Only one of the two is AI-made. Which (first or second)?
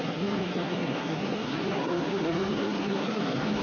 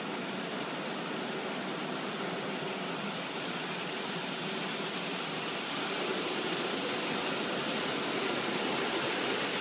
first